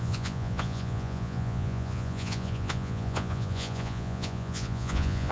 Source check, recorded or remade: remade